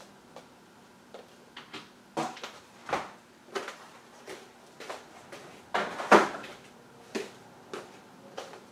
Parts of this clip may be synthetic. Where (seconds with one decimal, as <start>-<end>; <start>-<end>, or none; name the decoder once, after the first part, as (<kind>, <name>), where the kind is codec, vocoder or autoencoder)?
2.8-4.2 (vocoder, BigVGAN v2)